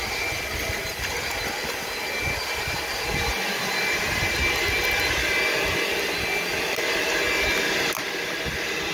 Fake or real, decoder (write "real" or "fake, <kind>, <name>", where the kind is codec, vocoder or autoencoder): real